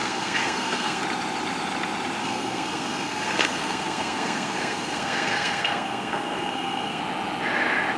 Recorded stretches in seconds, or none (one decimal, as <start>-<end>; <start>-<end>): 1.0-2.2; 7.0-8.0